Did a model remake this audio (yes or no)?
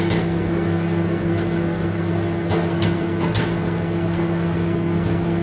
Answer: yes